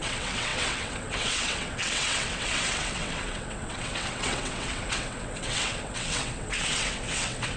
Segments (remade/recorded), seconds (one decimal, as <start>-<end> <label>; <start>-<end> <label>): 0.0-7.6 remade